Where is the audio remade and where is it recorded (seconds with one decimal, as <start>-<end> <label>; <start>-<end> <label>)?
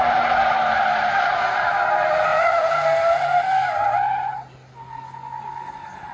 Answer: 0.0-6.1 recorded